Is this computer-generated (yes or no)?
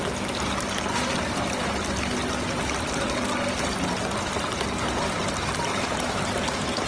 no